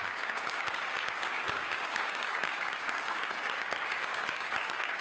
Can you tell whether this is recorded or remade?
remade